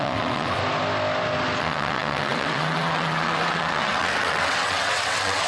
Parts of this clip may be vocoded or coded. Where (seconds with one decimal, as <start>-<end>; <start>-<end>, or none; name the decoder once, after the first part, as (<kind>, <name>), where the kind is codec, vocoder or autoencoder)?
0.0-0.6 (vocoder, WaveNeXt); 1.6-5.5

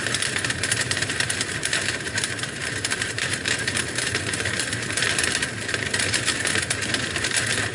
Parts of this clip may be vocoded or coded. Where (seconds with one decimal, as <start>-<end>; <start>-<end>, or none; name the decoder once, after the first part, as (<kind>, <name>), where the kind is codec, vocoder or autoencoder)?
0.0-5.0 (vocoder, BigVGAN v2); 6.0-7.7

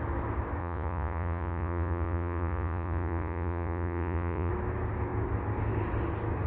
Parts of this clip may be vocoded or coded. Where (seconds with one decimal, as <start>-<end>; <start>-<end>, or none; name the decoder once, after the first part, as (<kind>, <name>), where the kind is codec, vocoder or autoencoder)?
0.6-4.5 (vocoder, Vocos)

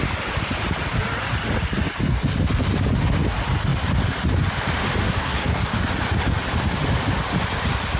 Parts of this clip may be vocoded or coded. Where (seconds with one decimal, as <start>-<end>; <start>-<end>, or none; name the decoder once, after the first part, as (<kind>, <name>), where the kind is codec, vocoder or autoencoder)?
5.0-5.6 (codec, SNAC)

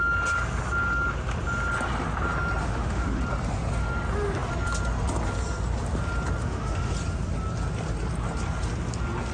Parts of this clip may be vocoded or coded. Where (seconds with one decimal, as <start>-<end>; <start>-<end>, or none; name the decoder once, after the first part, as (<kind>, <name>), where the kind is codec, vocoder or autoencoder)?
2.6-3.2 (autoencoder, DAC-VAE); 6.4-6.9

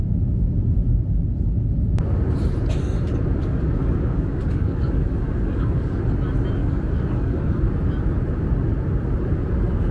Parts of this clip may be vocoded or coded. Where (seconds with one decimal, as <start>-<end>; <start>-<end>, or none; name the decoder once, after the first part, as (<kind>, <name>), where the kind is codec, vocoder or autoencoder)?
3.4-6.0 (codec, DAC); 6.6-7.7

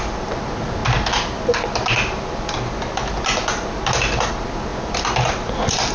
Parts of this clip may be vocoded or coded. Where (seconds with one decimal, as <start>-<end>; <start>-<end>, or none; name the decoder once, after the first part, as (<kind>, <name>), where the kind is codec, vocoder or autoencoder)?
none